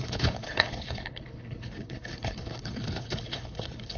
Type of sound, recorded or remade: remade